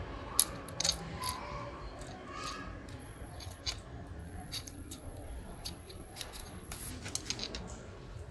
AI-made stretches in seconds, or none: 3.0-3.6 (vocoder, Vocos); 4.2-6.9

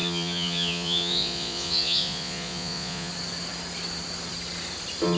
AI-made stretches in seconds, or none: 0.0-3.1 (vocoder, Vocos)

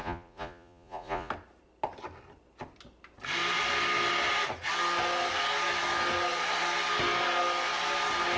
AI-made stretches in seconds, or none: 0.0-1.3 (vocoder, Vocos)

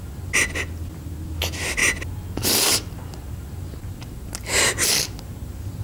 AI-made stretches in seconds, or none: none

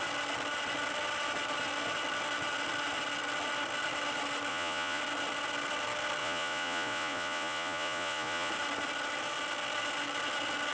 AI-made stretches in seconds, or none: 4.5-5.0 (vocoder, Vocos); 6.2-8.5

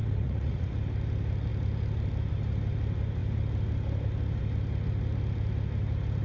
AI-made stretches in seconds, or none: 0.0-0.7 (vocoder, Vocos)

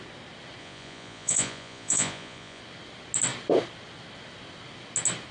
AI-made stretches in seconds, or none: 0.6-2.6 (vocoder, Vocos)

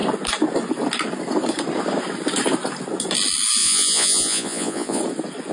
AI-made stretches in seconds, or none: 3.6-5.0 (vocoder, Vocos)